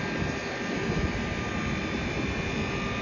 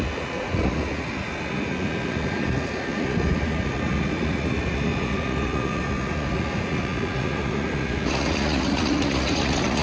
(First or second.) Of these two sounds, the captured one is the first